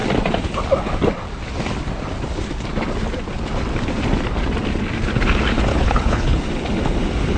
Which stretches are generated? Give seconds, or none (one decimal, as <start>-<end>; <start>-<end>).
5.7-6.4